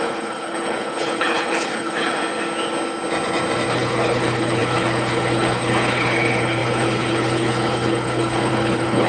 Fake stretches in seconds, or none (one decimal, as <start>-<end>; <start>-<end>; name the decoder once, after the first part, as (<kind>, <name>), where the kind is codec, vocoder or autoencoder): 0.0-2.2 (codec, HILCodec); 3.7-9.1